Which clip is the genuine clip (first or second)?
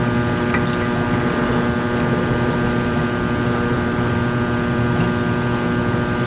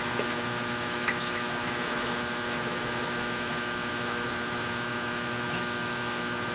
first